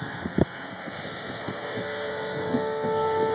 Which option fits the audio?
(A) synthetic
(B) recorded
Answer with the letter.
A